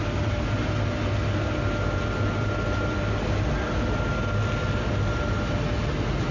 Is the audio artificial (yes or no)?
no